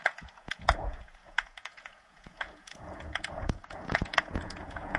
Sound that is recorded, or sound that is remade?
remade